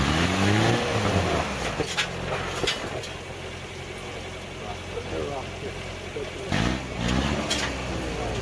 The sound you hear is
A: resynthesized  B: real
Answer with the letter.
B